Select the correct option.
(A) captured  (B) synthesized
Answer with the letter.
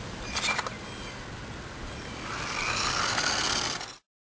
A